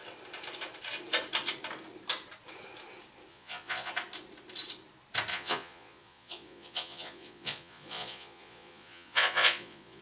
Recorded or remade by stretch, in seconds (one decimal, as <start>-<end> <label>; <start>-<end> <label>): 0.0-3.3 recorded; 3.3-3.9 remade; 3.9-5.3 recorded; 5.3-10.0 remade

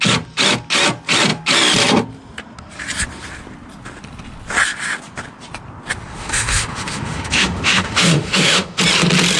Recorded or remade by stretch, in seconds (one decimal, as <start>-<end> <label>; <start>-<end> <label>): 0.0-6.1 recorded; 6.1-8.8 remade; 8.8-9.4 recorded